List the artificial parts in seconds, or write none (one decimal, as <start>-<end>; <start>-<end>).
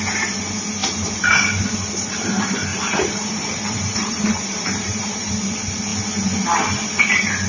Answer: 2.7-5.3